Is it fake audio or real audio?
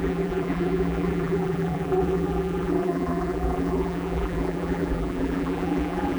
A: fake